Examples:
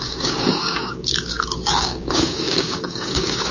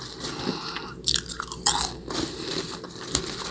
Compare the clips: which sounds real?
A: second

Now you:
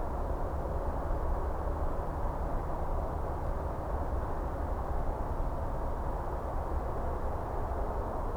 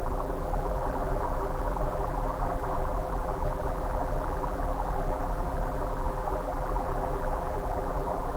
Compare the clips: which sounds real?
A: first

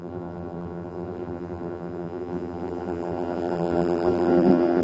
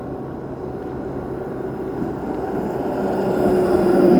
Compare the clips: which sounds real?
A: second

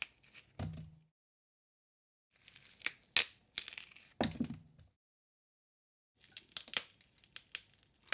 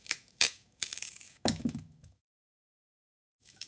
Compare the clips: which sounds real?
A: first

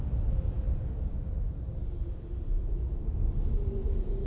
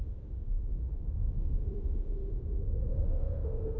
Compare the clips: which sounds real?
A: first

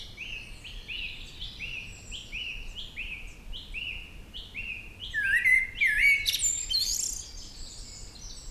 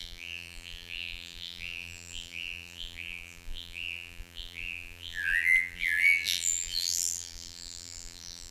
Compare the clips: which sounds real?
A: first